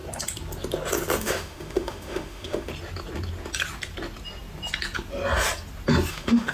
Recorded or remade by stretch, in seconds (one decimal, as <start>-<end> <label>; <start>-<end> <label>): 0.0-1.2 recorded; 1.2-2.7 remade; 2.7-6.1 recorded; 6.1-6.5 remade